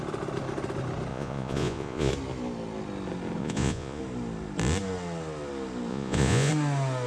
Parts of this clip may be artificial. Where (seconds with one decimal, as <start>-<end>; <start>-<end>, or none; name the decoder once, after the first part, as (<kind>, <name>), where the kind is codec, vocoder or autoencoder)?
1.1-2.1 (vocoder, Vocos); 3.4-4.0; 5.9-6.5